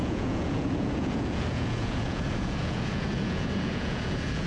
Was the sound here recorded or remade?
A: remade